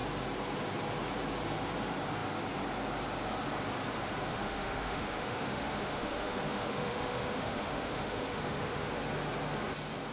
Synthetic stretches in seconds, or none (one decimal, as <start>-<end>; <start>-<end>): 4.3-8.9